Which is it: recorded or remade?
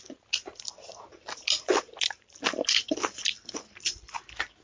recorded